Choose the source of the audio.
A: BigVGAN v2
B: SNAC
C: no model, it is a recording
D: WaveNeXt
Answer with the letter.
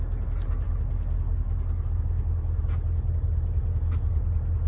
C